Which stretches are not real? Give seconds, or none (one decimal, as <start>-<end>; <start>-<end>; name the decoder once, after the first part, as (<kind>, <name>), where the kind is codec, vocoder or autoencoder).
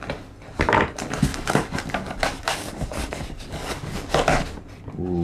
1.3-4.4 (codec, DAC)